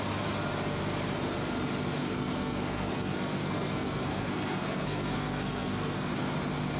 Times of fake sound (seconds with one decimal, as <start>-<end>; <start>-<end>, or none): 2.0-6.1